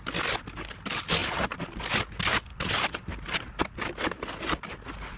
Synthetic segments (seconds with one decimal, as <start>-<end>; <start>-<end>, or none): 1.2-1.7; 2.5-3.6